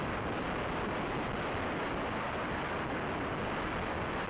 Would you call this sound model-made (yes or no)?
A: no